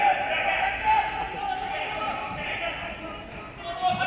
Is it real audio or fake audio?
real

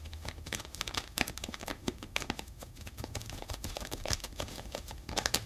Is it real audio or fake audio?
fake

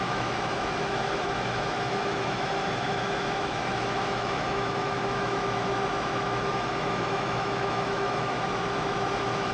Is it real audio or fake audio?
fake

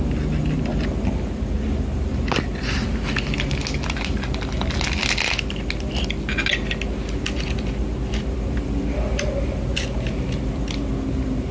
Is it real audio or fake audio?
real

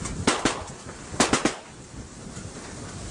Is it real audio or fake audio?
real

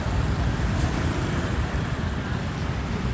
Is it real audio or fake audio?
real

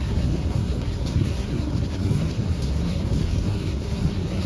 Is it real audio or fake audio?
fake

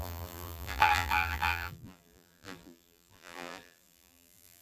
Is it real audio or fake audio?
fake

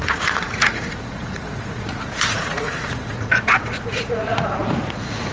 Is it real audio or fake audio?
fake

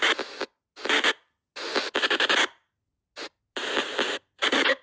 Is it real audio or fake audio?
real